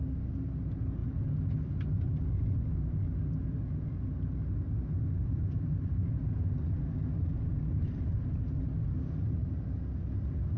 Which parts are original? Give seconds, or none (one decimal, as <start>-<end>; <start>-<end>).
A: 0.0-5.2; 6.6-7.5; 8.2-9.4; 9.9-10.6